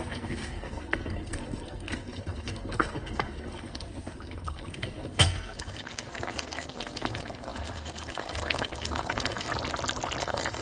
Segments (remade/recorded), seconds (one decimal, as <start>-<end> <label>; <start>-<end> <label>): 0.0-9.5 remade; 9.5-10.2 recorded; 10.2-10.6 remade